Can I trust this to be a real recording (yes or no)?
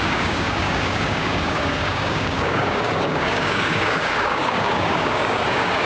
no